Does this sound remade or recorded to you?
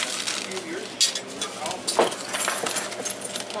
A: recorded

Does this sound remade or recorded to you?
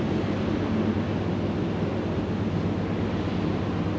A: recorded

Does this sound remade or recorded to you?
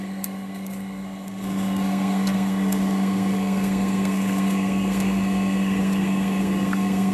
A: remade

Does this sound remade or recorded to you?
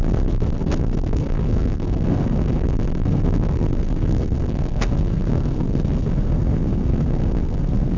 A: remade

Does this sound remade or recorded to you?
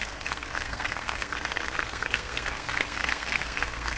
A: remade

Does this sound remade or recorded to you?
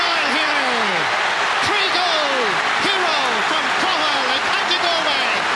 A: recorded